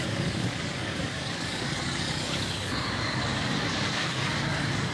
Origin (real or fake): fake